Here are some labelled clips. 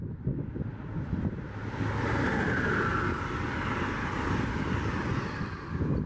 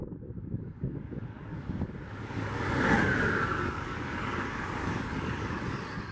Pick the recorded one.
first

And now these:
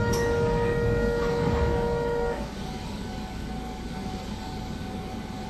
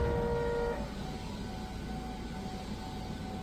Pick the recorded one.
second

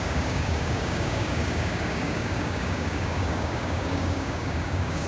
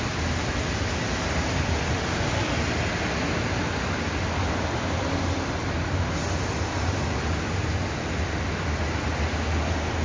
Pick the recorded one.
second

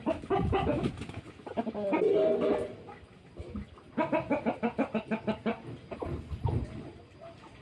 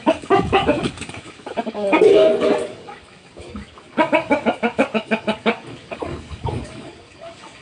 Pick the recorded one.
first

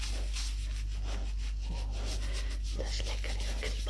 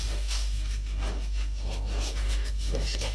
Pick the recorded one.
first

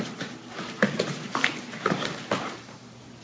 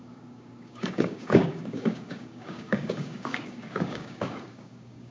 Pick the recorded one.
first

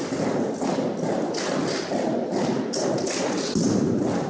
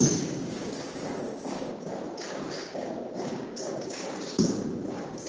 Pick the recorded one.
first